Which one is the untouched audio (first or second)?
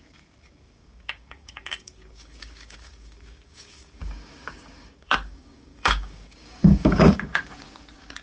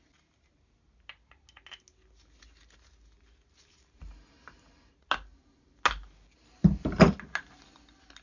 second